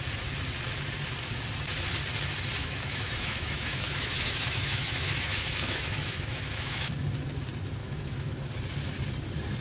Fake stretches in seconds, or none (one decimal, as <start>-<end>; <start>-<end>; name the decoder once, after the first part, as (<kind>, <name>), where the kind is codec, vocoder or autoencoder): 2.6-6.9 (autoencoder, DAC-VAE); 7.8-8.5